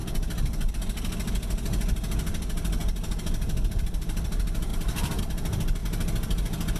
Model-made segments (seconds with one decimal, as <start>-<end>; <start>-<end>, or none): 0.0-2.8; 3.7-5.8